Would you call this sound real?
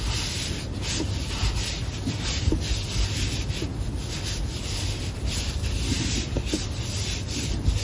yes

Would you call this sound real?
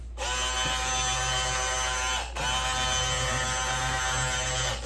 yes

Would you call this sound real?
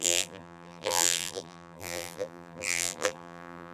no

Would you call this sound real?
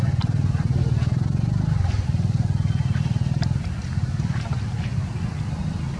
yes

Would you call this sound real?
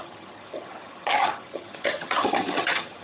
no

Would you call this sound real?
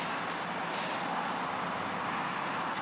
yes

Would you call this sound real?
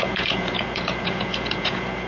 no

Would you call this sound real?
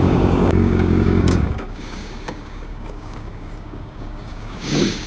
no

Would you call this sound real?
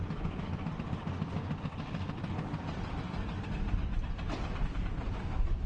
no